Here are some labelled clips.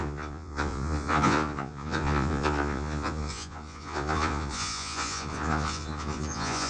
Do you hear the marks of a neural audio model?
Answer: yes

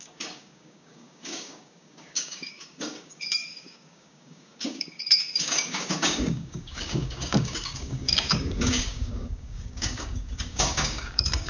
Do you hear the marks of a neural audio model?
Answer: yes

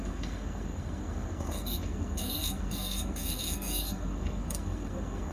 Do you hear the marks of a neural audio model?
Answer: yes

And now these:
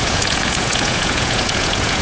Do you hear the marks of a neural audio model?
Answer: yes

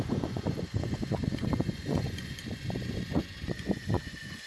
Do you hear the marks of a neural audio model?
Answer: yes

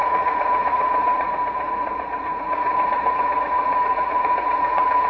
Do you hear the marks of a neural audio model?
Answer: yes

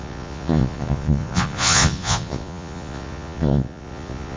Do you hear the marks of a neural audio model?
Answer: yes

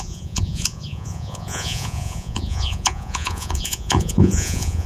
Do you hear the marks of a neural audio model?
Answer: yes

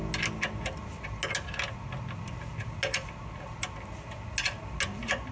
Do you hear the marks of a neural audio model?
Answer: no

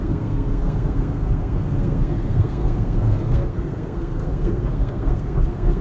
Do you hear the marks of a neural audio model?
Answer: yes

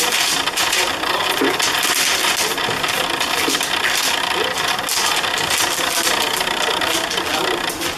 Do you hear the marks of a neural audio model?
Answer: no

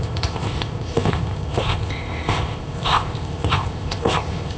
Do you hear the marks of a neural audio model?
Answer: yes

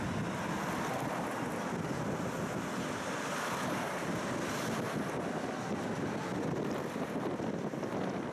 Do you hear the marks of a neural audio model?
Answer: no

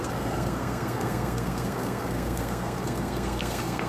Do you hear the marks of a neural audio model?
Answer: yes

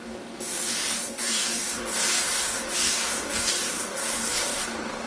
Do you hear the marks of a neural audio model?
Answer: yes